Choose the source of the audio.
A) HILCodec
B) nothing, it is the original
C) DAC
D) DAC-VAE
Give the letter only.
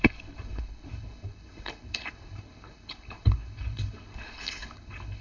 A